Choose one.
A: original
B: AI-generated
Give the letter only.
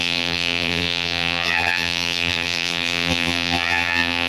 B